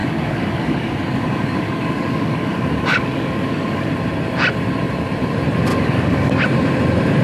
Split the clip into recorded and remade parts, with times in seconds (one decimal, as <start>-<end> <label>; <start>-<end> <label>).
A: 0.0-3.9 remade; 3.9-5.7 recorded; 5.7-6.4 remade; 6.4-7.2 recorded